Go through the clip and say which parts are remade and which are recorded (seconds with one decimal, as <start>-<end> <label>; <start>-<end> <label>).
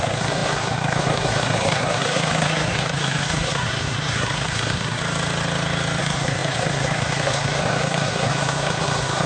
0.0-5.0 remade; 5.0-6.0 recorded; 6.0-9.3 remade